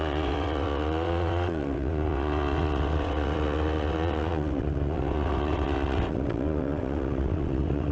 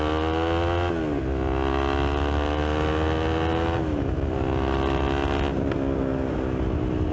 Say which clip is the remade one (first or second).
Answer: first